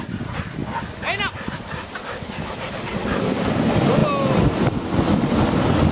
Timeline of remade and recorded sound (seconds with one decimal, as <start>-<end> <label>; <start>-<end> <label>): 0.0-5.9 recorded

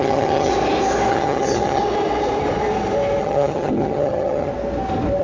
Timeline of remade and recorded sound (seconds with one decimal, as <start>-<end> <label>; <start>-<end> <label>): 0.0-0.5 remade; 0.5-1.1 recorded; 1.1-1.8 remade; 1.8-3.2 recorded; 3.2-4.5 remade; 4.5-5.2 recorded

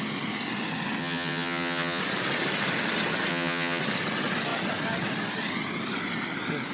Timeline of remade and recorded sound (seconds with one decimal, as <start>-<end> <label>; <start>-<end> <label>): 0.0-1.0 recorded; 1.0-2.0 remade; 2.0-3.3 recorded; 3.3-3.8 remade; 3.8-6.7 recorded

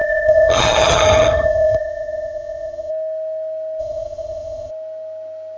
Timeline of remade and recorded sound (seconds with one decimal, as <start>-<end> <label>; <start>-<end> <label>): 0.0-2.9 remade; 2.9-3.8 recorded; 3.8-4.7 remade; 4.7-5.6 recorded

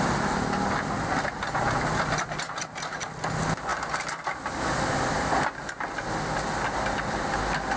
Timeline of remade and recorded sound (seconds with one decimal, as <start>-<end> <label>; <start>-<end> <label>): 0.0-7.8 recorded

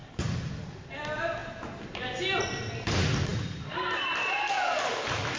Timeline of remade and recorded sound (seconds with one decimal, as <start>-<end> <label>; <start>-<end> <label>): 0.0-5.4 recorded

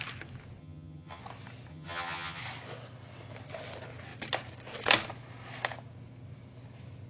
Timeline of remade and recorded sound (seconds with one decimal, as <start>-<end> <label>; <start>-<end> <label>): 0.0-0.6 recorded; 0.6-1.2 remade; 1.2-1.7 recorded; 1.7-2.4 remade; 2.4-7.1 recorded